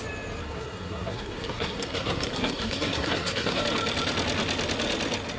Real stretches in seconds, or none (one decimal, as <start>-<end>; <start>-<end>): 0.0-0.4; 3.6-5.4